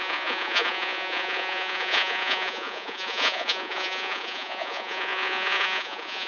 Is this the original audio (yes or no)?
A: no